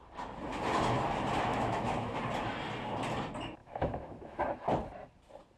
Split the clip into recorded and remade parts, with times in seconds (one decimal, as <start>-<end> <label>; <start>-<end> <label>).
0.0-1.5 recorded; 1.5-2.1 remade; 2.1-3.6 recorded; 3.6-4.4 remade; 4.4-5.6 recorded